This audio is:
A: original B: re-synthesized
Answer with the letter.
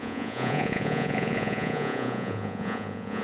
B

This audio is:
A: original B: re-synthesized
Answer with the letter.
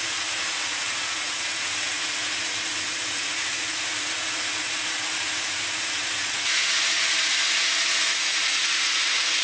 B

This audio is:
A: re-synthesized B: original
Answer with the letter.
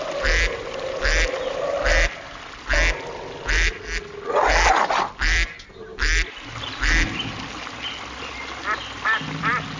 B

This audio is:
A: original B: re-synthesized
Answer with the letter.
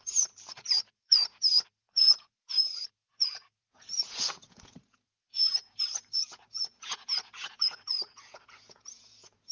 B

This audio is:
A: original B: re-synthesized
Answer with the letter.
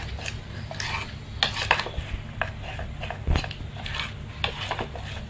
A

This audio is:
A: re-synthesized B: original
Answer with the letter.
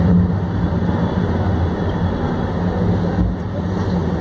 B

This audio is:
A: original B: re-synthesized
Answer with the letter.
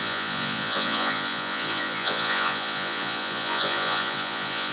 B